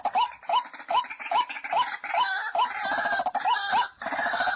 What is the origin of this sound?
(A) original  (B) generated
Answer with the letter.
A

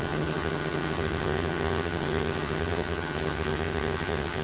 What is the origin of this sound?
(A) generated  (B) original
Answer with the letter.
A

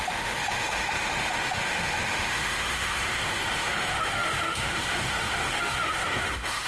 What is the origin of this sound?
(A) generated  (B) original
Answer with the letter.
A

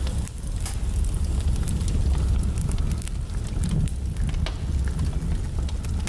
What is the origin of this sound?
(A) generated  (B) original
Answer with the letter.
B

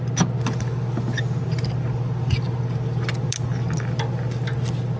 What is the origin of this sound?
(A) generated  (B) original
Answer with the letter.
B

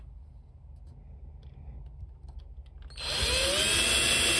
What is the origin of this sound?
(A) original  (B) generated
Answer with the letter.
A